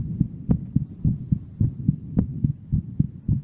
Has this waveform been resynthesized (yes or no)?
no